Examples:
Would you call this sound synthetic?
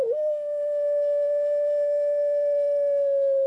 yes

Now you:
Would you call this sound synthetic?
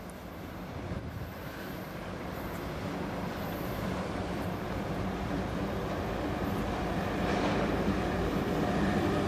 yes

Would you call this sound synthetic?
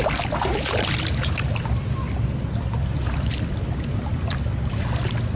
no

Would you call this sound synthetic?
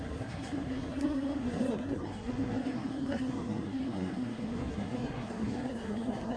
yes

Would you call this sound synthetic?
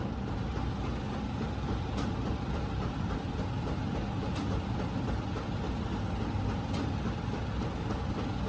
no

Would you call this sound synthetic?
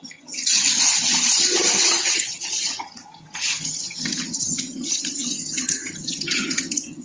yes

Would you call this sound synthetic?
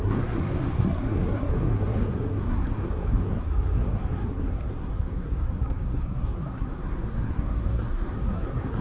yes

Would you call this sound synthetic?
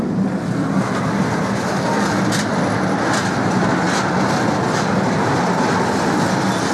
no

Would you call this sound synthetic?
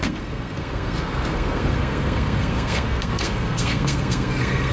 yes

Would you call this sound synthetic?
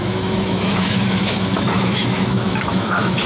yes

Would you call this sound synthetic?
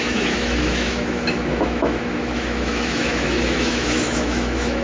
yes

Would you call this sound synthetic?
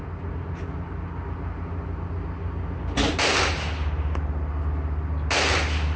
no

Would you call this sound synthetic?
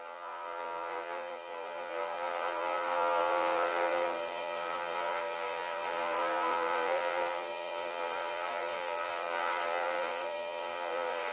yes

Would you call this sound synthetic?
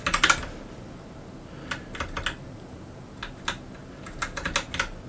no